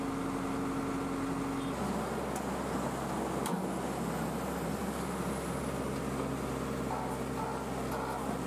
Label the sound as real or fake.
real